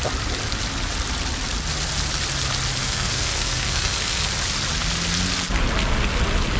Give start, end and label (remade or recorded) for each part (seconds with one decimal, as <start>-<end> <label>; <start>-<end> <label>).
0.0-2.8 recorded; 2.8-4.3 remade; 4.3-6.6 recorded